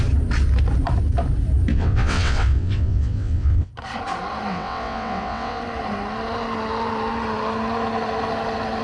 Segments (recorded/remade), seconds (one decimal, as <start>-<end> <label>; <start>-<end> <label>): 0.0-1.7 recorded; 1.7-3.7 remade; 3.7-4.5 recorded; 4.5-5.6 remade; 5.6-8.8 recorded

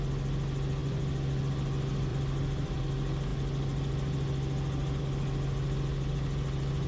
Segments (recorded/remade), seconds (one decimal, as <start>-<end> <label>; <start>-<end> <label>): 0.0-0.8 recorded; 0.8-1.4 remade; 1.4-2.1 recorded; 2.1-2.8 remade; 2.8-6.9 recorded

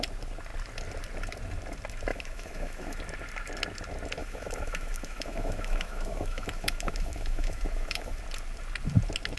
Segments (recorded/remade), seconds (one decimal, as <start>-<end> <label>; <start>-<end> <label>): 0.0-2.1 recorded; 2.1-3.0 remade; 3.0-4.2 recorded; 4.2-8.2 remade; 8.2-9.4 recorded

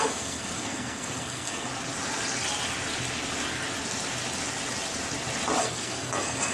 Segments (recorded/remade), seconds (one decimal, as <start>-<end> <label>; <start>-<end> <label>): 0.0-1.7 remade; 1.7-5.6 recorded; 5.6-6.5 remade

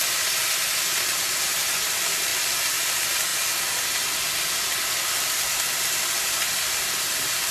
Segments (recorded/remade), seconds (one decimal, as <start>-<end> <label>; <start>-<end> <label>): 0.0-2.3 recorded; 2.3-2.8 remade; 2.8-7.5 recorded

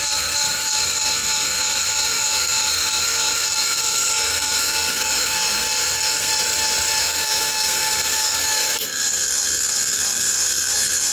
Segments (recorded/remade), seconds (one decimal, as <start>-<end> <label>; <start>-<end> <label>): 0.0-6.3 remade; 6.3-7.0 recorded; 7.0-11.1 remade

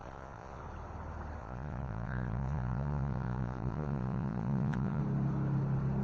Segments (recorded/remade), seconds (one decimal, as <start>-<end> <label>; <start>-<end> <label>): 0.0-0.6 remade; 0.6-1.4 recorded; 1.4-5.0 remade; 5.0-6.0 recorded

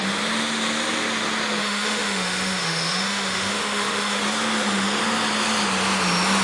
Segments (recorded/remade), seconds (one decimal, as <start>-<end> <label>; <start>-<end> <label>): 0.0-1.6 recorded; 1.6-4.2 remade; 4.2-6.4 recorded